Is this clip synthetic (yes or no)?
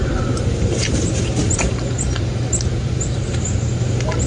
yes